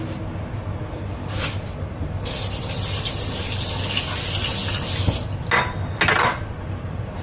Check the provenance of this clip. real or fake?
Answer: real